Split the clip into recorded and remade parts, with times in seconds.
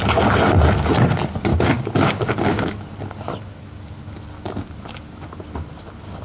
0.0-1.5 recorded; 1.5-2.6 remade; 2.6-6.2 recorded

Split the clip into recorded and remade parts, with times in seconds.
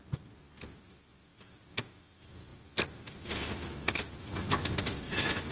0.0-5.5 recorded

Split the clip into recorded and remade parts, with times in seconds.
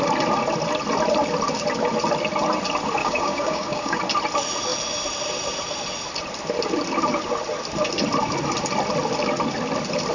0.0-3.0 recorded; 3.0-4.0 remade; 4.0-10.1 recorded